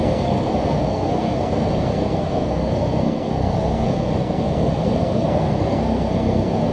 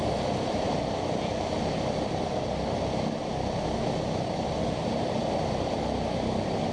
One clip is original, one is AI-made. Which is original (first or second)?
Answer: second